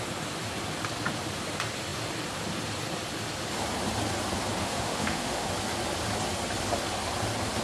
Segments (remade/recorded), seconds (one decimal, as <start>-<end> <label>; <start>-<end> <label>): 0.0-4.6 recorded; 4.6-5.5 remade; 5.5-7.6 recorded